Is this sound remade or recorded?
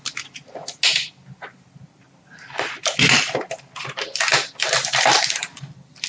recorded